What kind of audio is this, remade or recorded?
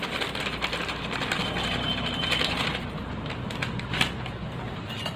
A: remade